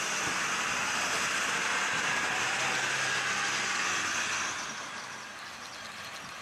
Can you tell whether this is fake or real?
real